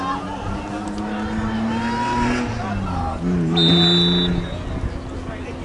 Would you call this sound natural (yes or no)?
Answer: yes